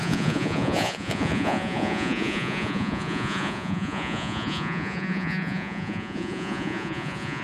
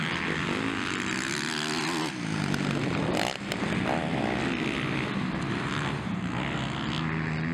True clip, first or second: second